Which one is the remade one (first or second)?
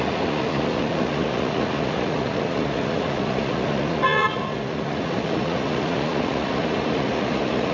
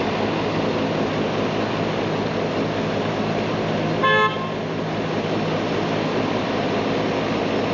first